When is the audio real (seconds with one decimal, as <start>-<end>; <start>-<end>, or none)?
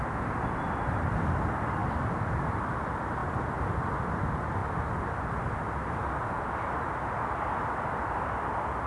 0.0-1.8; 2.7-3.2; 3.9-8.9